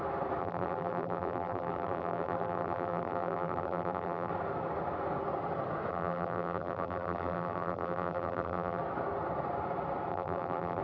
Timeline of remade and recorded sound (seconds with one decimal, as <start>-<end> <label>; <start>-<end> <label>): 0.0-0.4 recorded; 0.4-4.3 remade; 4.3-5.9 recorded; 5.9-8.8 remade; 8.8-10.1 recorded; 10.1-10.8 remade